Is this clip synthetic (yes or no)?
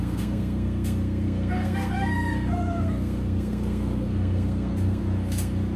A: yes